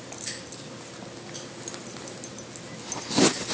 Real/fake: real